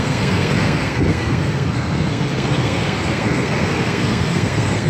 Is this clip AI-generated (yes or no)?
yes